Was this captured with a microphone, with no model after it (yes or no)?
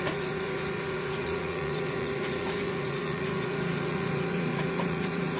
no